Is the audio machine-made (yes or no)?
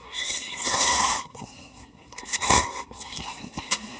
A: yes